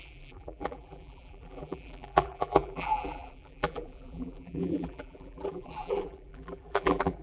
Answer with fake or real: fake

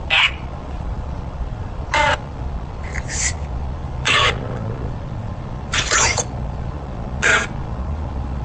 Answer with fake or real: fake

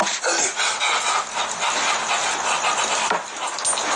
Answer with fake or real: real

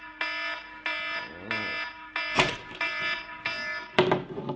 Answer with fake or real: real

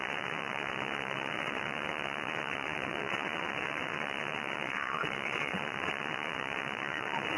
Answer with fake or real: fake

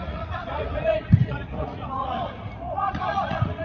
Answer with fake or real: fake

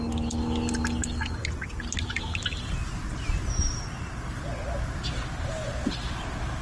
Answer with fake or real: real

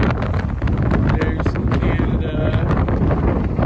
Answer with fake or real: real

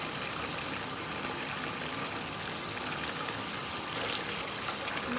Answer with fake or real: real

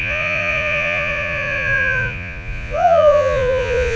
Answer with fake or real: fake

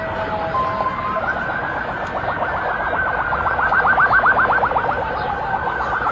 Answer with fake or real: real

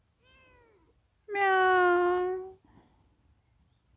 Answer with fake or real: real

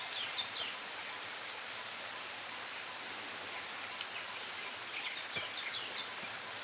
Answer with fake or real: real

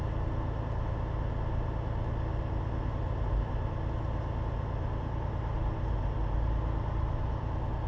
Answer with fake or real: real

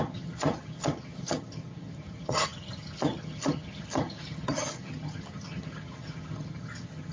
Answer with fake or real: fake